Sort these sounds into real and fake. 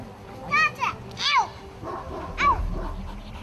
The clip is real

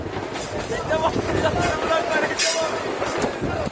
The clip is real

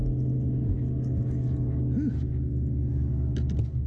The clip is real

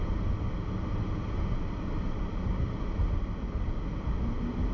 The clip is real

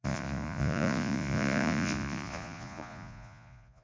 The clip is fake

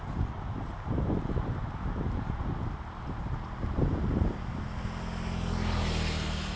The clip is real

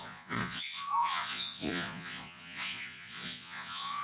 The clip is fake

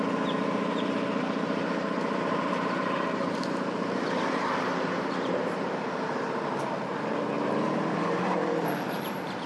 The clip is fake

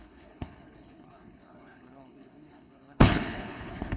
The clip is fake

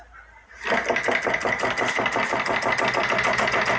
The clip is real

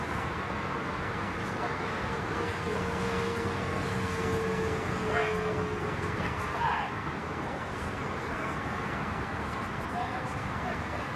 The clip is fake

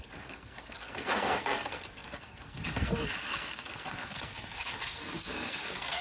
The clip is fake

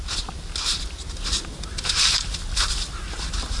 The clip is real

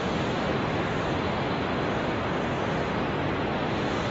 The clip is real